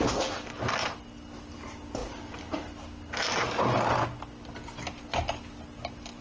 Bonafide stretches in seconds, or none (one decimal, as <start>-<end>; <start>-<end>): 0.0-6.2